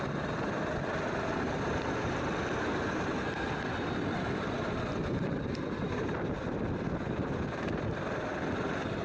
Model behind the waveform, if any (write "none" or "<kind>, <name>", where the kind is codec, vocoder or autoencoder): vocoder, BigVGAN v2